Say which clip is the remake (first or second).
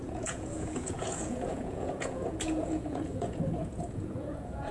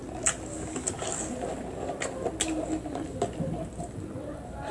first